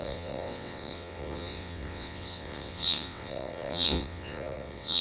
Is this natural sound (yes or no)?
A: no